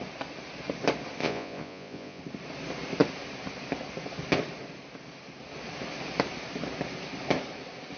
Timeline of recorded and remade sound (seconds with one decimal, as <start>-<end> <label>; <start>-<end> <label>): 0.0-1.2 recorded; 1.2-2.2 remade; 2.2-8.0 recorded